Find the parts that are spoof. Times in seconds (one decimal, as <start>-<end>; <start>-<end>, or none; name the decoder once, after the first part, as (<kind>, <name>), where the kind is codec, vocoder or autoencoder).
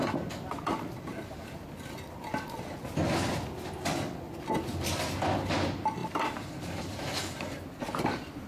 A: none